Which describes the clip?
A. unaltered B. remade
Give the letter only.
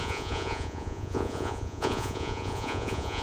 B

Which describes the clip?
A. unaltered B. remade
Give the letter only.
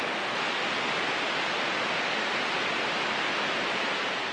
A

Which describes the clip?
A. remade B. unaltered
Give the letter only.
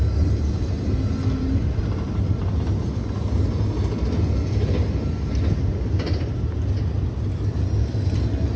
B